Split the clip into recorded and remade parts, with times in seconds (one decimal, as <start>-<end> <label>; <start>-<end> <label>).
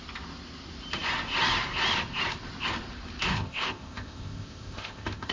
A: 0.0-3.3 recorded; 3.3-5.3 remade